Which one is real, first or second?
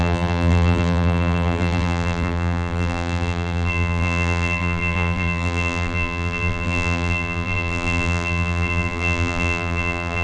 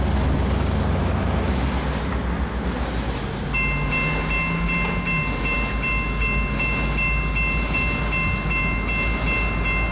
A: second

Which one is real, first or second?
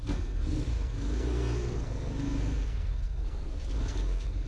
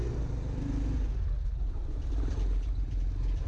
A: second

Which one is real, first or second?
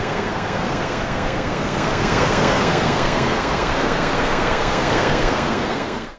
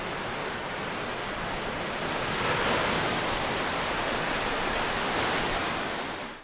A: second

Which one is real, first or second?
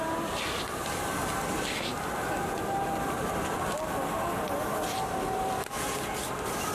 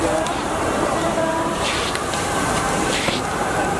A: first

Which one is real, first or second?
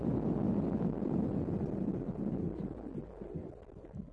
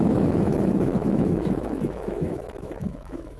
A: first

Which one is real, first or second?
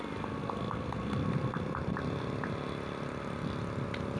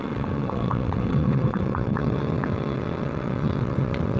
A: first